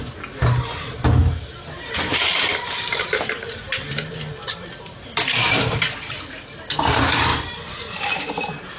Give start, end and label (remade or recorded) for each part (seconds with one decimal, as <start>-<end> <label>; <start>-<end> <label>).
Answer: 0.0-2.1 recorded; 2.1-6.7 remade; 6.7-7.3 recorded; 7.3-8.8 remade